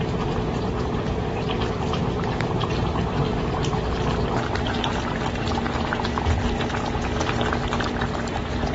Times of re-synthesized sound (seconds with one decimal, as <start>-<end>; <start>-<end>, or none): 0.0-7.1; 8.1-8.7